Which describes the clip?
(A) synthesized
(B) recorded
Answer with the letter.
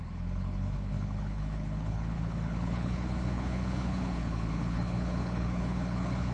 A